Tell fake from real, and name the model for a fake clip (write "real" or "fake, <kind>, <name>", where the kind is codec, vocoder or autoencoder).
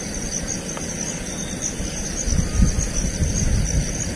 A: real